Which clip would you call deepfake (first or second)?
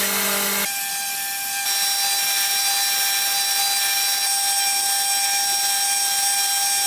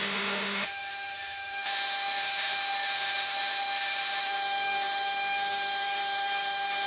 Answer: second